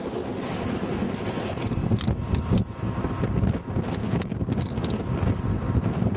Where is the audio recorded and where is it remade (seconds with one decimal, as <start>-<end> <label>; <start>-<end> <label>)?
0.0-4.0 recorded; 4.0-4.6 remade; 4.6-6.2 recorded